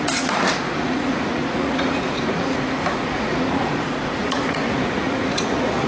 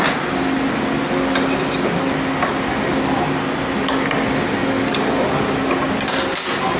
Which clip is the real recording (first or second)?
second